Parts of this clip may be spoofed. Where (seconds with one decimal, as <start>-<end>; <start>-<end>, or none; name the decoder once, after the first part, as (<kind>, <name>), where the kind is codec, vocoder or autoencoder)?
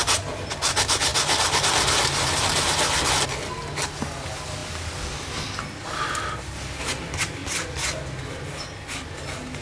none